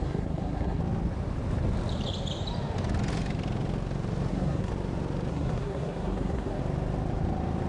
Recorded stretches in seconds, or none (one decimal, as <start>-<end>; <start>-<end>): 0.8-4.3; 4.7-5.3; 6.6-7.7